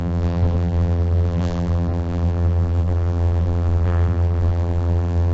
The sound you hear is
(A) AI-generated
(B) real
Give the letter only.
A